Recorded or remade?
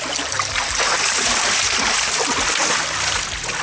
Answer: recorded